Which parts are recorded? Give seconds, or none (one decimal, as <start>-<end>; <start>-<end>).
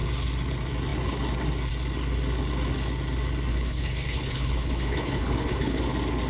0.0-3.5; 5.8-6.3